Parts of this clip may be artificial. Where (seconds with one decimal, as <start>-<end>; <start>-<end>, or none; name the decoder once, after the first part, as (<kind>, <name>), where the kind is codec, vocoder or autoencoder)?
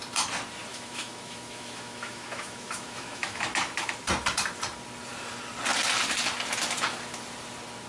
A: 0.7-3.9 (autoencoder, DAC-VAE)